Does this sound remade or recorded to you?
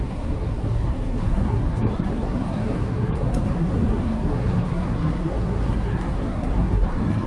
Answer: remade